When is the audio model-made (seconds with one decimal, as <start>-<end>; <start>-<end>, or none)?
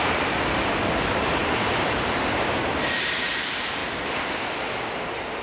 none